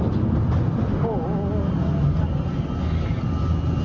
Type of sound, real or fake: real